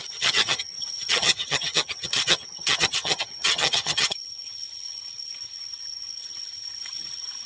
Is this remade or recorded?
remade